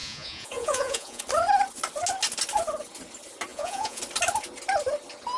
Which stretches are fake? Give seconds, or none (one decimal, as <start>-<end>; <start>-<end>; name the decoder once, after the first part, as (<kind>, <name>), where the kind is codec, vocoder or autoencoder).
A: 0.0-1.2 (vocoder, Vocos); 3.5-4.0